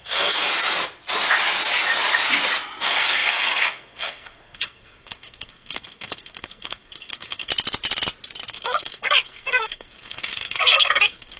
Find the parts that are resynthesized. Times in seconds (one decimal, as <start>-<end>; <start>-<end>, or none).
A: 0.0-0.5; 2.8-7.5; 8.5-11.4